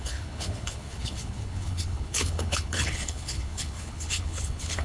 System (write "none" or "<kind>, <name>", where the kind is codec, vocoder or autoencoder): codec, HILCodec